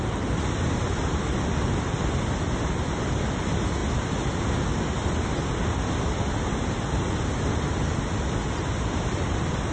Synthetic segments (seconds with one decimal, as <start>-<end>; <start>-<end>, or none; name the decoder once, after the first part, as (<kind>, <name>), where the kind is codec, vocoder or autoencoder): none